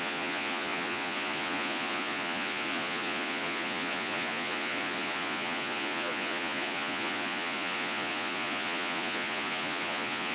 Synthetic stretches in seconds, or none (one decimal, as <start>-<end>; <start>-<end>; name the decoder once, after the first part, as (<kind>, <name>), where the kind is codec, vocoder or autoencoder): 0.0-10.3 (vocoder, Vocos)